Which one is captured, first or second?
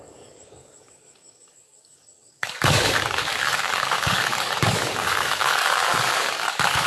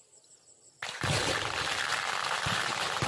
second